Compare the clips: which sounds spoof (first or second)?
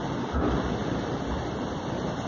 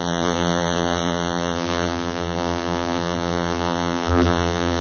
second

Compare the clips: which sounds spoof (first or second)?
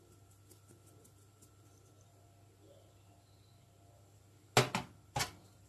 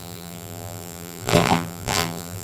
second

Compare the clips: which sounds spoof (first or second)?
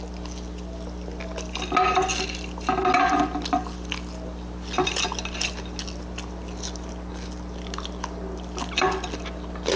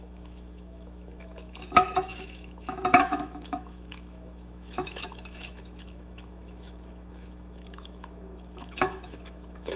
second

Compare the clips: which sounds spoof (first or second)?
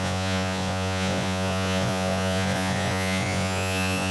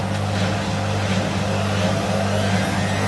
first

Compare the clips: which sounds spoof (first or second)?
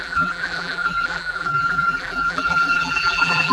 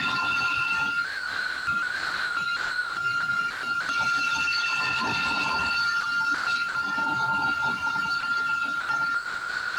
first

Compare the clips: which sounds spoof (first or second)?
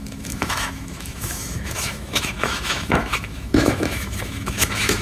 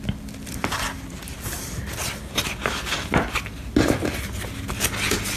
first